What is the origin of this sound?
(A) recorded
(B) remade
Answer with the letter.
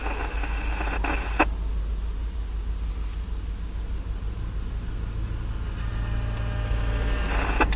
A